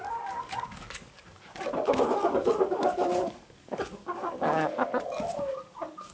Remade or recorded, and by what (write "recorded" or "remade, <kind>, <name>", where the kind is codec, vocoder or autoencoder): remade, codec, DAC